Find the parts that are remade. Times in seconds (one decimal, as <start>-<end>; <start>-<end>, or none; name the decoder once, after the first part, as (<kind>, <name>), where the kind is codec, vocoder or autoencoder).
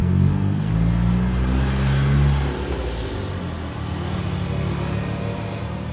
0.0-0.7 (codec, SNAC)